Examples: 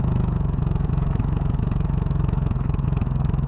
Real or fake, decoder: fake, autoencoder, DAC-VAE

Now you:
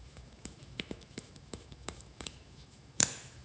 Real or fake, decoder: fake, autoencoder, DAC-VAE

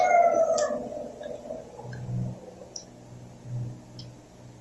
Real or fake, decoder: real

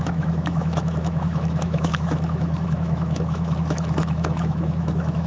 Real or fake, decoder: fake, autoencoder, DAC-VAE